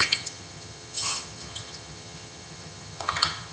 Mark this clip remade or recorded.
remade